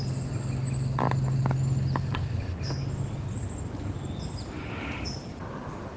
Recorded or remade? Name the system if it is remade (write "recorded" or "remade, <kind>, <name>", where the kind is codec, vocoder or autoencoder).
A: recorded